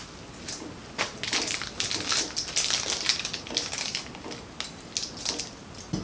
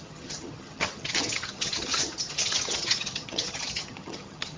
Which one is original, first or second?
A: first